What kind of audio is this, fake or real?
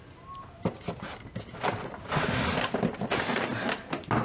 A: real